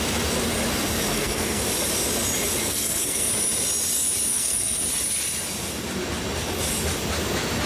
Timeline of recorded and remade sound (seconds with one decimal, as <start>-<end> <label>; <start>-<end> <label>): 0.0-1.1 recorded; 1.1-1.7 remade; 1.7-2.6 recorded; 2.6-3.3 remade; 3.3-4.3 recorded; 4.3-4.8 remade; 4.8-7.7 recorded